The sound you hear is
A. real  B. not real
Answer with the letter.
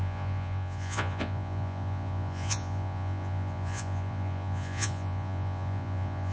B